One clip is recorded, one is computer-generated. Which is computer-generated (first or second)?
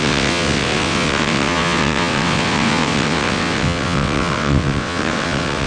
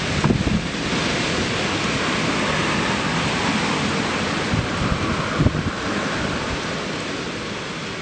first